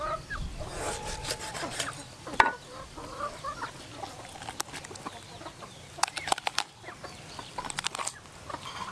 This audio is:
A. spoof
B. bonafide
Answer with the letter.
B